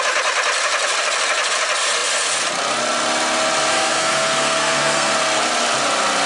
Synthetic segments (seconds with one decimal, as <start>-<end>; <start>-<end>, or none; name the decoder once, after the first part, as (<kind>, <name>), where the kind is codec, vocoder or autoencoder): 3.7-5.1 (codec, SNAC)